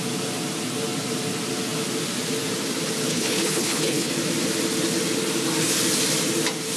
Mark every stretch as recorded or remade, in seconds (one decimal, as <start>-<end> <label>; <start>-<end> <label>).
0.0-3.1 recorded; 3.1-4.1 remade; 4.1-6.8 recorded